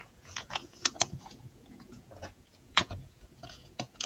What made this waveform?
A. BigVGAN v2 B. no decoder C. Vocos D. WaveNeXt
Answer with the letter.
C